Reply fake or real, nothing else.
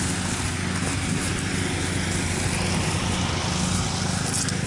real